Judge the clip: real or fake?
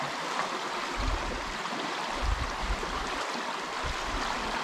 real